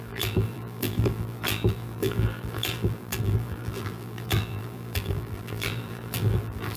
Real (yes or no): no